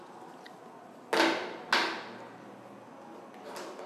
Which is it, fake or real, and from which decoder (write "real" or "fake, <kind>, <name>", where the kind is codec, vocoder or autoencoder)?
real